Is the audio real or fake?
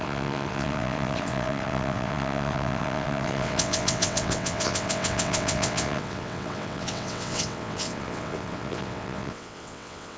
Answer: fake